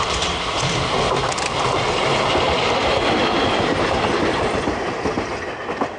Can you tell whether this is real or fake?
real